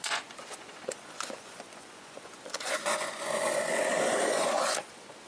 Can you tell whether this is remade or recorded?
remade